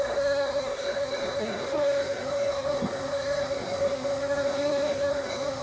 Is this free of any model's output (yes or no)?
no